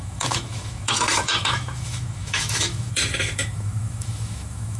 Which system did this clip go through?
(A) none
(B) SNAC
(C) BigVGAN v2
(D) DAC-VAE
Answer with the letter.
D